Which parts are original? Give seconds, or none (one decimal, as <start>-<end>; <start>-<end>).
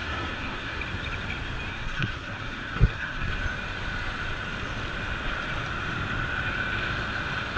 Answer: 0.8-1.7; 3.3-7.6